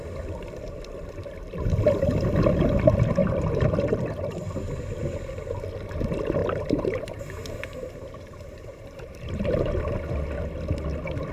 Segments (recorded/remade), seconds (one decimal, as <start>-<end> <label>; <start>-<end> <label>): 0.0-3.2 recorded; 3.2-4.3 remade; 4.3-6.4 recorded; 6.4-9.8 remade; 9.8-11.3 recorded